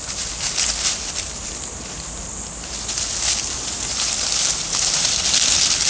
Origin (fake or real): real